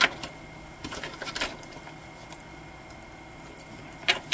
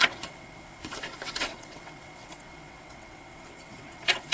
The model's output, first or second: second